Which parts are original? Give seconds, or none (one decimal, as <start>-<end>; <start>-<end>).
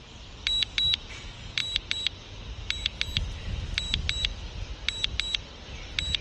0.0-6.2